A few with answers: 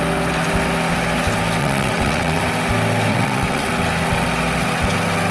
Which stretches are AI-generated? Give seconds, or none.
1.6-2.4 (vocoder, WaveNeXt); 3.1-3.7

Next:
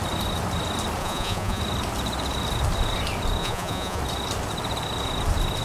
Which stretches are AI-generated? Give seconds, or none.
1.0-1.6 (vocoder, Vocos); 3.4-4.0

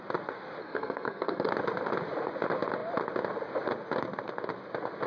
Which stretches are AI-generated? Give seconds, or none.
0.6-1.5 (codec, SNAC)

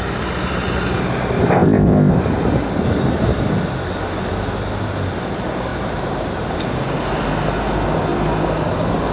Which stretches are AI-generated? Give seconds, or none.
1.5-2.2 (codec, ZipCodec)

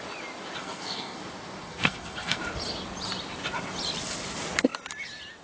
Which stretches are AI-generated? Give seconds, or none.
0.6-1.2 (codec, SNAC); 1.6-2.4